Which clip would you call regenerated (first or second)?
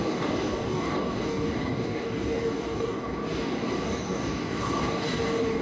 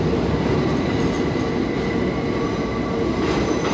first